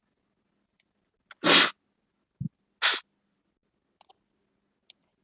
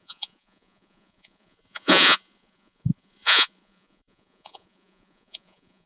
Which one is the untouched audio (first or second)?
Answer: first